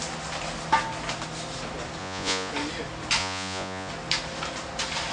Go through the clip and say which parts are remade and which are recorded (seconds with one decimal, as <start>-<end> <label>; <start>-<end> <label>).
0.0-2.0 recorded; 2.0-2.5 remade; 2.5-3.2 recorded; 3.2-3.9 remade; 3.9-5.1 recorded